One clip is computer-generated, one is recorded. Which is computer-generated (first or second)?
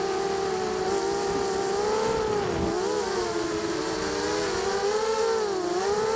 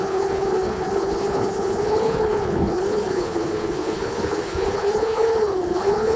second